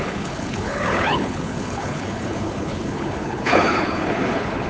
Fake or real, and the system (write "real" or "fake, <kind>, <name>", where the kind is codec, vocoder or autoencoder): fake, codec, HILCodec